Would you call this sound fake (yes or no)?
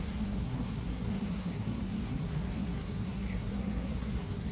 yes